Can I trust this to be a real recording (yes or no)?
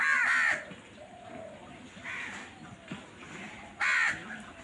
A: yes